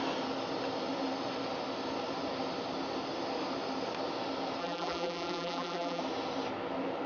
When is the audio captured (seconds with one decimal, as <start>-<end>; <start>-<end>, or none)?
0.0-4.6; 6.0-7.1